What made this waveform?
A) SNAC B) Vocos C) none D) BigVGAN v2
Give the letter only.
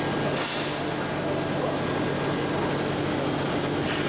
C